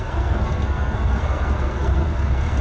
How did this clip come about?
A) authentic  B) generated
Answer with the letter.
B